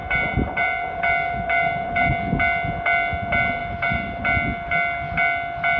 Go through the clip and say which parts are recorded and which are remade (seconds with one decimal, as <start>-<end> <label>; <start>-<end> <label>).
0.0-2.1 remade; 2.1-3.6 recorded; 3.6-4.2 remade; 4.2-5.8 recorded